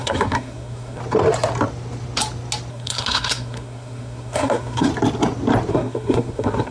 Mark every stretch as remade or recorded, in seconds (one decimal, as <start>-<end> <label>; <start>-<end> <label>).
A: 0.0-1.0 remade; 1.0-2.7 recorded; 2.7-4.9 remade; 4.9-5.7 recorded; 5.7-6.7 remade